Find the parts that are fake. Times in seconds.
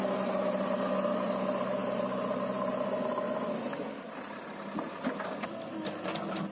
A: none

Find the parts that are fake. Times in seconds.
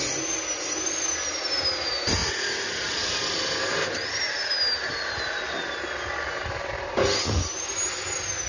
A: none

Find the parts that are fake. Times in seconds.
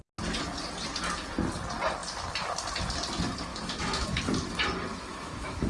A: 3.5-4.2; 4.9-5.7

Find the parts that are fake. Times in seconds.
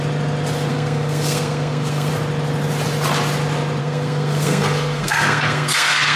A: 0.7-2.1; 3.8-6.2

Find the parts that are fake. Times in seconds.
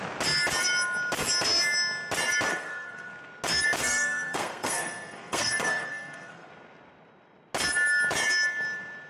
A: 2.5-3.1; 3.8-6.5